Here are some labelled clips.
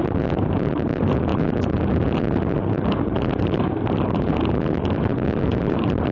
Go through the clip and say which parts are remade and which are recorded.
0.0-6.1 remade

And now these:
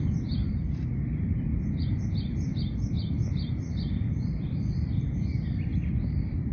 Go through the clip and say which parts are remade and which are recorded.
0.0-1.5 remade; 1.5-2.0 recorded; 2.0-2.5 remade; 2.5-3.5 recorded; 3.5-5.7 remade; 5.7-6.5 recorded

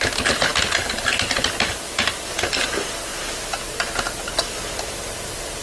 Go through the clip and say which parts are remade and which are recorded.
0.0-5.6 recorded

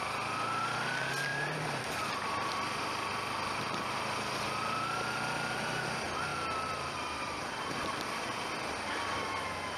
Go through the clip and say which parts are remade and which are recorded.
0.0-1.3 recorded; 1.3-2.5 remade; 2.5-6.3 recorded; 6.3-7.7 remade; 7.7-9.8 recorded